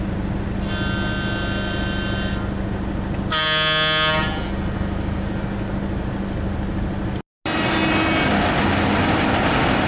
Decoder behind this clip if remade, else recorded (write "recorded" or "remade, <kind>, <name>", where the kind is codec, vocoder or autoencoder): recorded